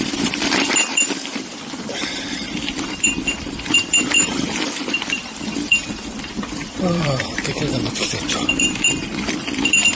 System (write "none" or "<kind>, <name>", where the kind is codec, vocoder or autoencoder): vocoder, BigVGAN v2